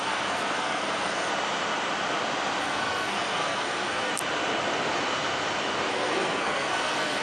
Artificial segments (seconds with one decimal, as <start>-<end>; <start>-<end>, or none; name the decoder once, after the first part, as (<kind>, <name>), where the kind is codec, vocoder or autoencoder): 0.0-1.3 (codec, SNAC); 2.6-4.1; 5.9-7.2